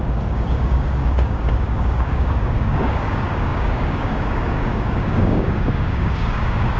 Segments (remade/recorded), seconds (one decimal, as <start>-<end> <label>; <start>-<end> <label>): 0.0-6.8 remade